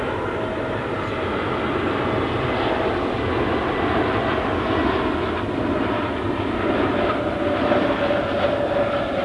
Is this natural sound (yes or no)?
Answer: yes